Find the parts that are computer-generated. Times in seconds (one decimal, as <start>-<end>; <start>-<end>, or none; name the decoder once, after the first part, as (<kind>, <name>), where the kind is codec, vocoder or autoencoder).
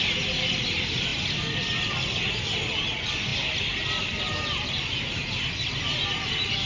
none